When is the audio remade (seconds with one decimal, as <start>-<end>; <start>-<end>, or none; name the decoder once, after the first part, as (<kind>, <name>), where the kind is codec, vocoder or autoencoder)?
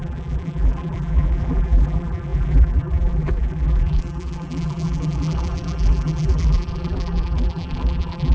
0.0-8.3 (vocoder, BigVGAN v2)